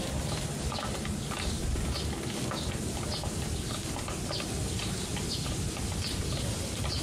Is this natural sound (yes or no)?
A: yes